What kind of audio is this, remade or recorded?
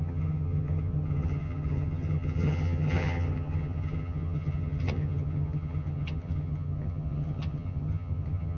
remade